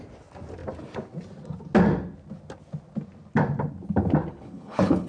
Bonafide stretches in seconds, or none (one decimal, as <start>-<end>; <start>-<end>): 0.0-4.3

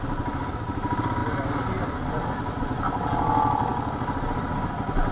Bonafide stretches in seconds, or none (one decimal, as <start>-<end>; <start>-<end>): 0.0-5.1

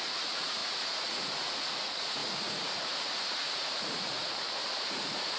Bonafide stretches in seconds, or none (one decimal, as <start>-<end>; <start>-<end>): none